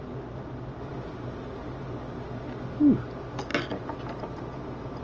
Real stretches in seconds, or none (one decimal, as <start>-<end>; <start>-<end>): 0.0-5.0